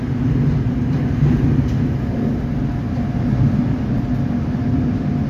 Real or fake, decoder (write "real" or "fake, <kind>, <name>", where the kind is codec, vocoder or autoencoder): real